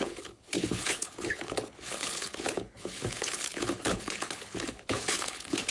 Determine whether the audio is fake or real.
fake